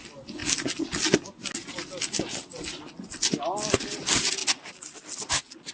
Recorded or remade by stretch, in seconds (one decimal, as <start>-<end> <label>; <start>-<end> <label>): 0.0-5.7 recorded